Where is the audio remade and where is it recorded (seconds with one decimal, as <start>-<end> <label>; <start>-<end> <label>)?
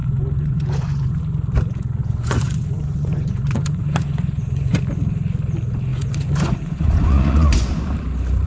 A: 0.0-1.2 remade; 1.2-2.0 recorded; 2.0-4.8 remade; 4.8-5.9 recorded; 5.9-7.7 remade; 7.7-8.5 recorded